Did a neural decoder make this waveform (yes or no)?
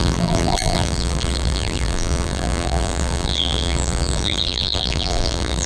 yes